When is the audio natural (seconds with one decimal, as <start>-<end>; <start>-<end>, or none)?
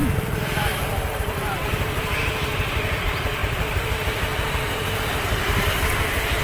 none